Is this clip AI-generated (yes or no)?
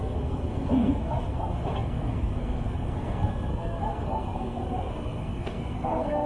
yes